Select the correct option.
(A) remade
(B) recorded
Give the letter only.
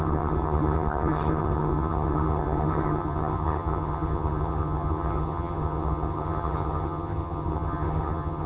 A